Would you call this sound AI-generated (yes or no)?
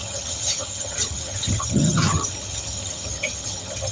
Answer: yes